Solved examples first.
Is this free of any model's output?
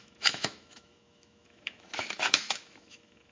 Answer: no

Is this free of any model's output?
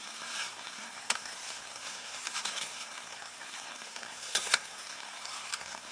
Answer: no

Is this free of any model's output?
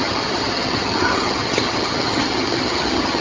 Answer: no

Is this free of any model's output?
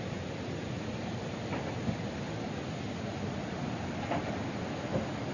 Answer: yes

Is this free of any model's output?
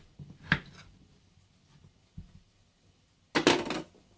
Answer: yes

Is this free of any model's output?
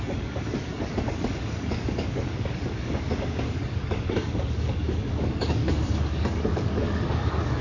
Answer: no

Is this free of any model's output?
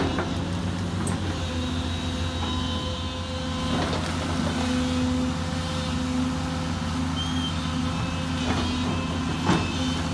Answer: yes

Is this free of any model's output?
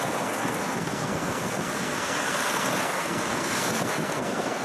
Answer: no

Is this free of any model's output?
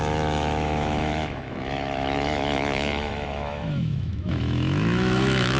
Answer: no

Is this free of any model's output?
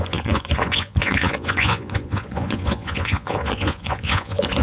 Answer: no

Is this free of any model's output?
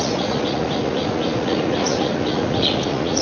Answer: no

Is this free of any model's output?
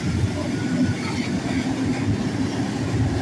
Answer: no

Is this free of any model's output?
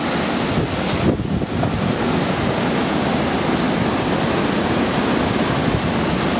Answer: yes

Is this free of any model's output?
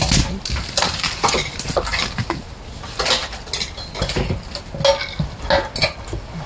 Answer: yes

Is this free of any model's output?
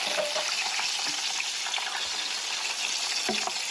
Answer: yes